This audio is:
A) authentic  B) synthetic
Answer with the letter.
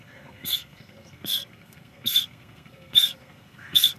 B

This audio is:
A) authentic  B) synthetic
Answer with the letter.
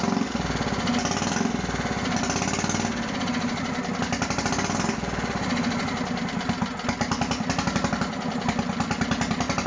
A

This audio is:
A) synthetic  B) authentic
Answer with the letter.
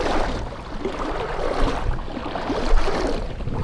B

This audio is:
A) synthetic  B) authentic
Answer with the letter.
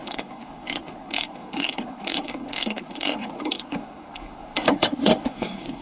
A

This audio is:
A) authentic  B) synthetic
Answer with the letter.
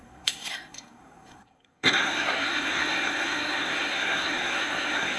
B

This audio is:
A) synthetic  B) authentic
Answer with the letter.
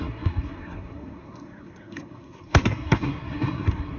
A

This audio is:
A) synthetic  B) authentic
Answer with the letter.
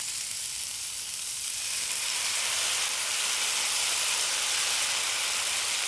B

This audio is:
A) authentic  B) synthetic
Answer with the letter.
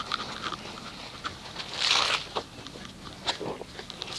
A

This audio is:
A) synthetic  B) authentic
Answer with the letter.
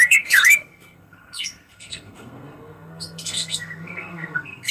A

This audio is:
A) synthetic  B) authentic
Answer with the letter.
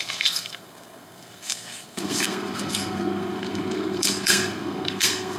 A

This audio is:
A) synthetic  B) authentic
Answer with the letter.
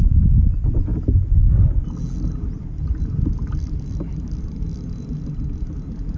B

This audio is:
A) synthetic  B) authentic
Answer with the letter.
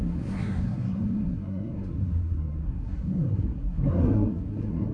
A